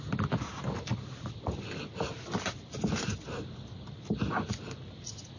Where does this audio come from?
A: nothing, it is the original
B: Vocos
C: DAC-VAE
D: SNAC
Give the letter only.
A